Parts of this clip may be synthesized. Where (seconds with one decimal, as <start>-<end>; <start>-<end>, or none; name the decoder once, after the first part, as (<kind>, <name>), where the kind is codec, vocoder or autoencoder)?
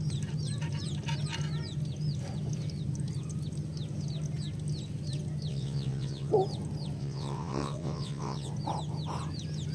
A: 5.5-6.3 (vocoder, WaveNeXt); 7.0-8.5